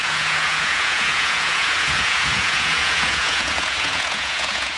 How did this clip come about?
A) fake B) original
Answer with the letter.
A